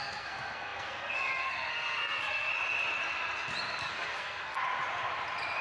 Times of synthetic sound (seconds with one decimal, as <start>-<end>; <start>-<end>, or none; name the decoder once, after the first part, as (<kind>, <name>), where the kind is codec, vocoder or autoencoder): 0.0-2.5 (codec, SNAC); 3.8-4.6